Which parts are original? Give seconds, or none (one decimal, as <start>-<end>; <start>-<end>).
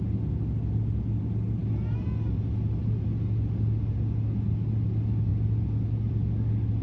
0.0-6.8